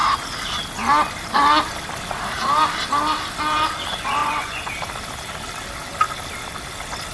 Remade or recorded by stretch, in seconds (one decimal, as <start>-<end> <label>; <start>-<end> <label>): 0.0-4.2 recorded; 4.2-4.7 remade; 4.7-7.1 recorded